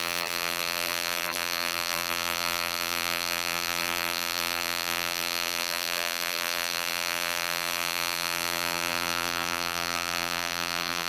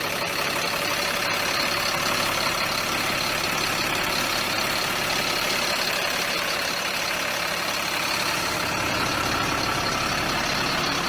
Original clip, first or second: second